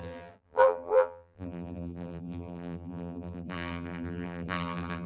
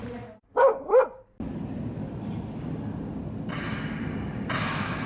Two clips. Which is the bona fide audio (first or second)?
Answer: second